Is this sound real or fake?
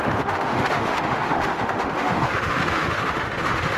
fake